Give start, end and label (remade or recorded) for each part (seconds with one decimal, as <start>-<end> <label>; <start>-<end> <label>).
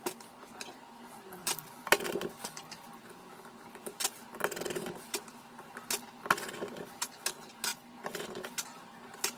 0.0-1.4 recorded; 1.4-3.0 remade; 3.0-9.4 recorded